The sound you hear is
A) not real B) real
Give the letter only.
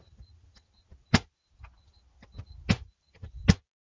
B